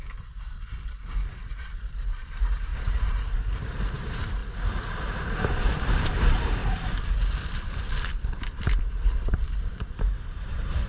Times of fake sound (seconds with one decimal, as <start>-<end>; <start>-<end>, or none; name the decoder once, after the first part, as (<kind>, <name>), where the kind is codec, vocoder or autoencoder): 0.0-4.4 (vocoder, BigVGAN v2); 5.7-6.6; 7.6-10.9

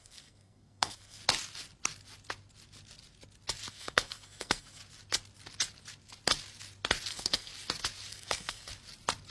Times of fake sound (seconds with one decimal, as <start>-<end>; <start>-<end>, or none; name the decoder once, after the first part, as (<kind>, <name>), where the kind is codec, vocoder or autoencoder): 0.0-1.2 (codec, SNAC); 3.7-4.8; 7.1-7.5; 8.1-8.7

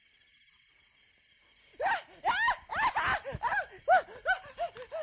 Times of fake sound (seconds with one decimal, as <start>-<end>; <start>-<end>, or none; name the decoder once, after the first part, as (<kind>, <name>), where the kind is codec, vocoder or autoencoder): none

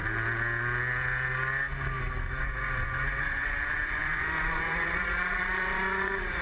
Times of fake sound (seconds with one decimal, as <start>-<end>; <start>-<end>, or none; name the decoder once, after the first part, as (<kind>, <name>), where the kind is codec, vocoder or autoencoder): 2.4-6.4 (vocoder, Vocos)

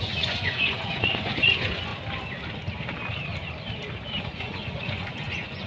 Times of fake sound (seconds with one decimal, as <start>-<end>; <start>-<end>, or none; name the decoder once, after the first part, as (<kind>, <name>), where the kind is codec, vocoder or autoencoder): 0.0-1.9 (vocoder, Vocos); 4.2-5.7

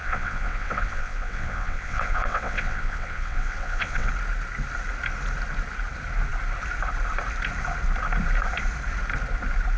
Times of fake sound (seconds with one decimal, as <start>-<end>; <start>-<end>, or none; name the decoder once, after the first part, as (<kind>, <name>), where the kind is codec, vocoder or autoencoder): 0.0-4.1 (vocoder, WaveNeXt)

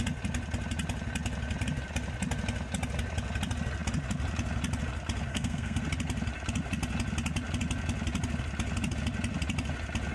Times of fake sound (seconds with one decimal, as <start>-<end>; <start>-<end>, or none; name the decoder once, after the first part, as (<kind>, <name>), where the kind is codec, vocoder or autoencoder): 5.3-5.8 (codec, SNAC)

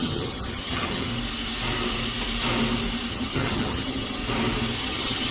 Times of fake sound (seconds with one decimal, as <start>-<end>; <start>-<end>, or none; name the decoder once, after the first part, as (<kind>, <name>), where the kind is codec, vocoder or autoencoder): 0.0-1.1 (vocoder, HiFi-GAN); 3.1-4.2; 4.8-5.3